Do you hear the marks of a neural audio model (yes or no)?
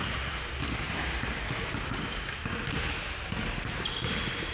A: no